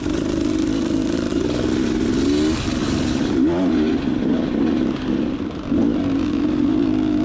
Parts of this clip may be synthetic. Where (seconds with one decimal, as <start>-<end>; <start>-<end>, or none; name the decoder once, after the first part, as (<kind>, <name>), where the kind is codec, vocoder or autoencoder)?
none